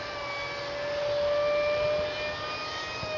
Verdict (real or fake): real